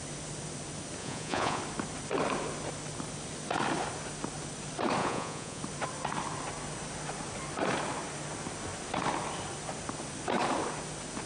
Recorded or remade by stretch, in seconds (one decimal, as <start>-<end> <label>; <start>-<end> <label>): 0.0-1.0 recorded; 1.0-1.6 remade; 1.6-5.0 recorded; 5.0-5.6 remade; 5.6-11.3 recorded